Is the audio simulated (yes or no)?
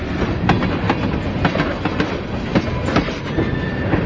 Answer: no